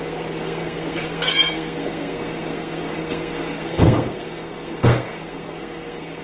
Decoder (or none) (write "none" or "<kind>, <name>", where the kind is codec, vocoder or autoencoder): codec, SNAC